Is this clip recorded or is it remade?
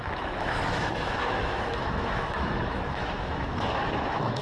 remade